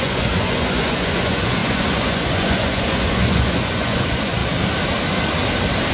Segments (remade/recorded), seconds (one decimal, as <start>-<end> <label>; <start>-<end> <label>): 0.0-4.4 remade; 4.4-5.9 recorded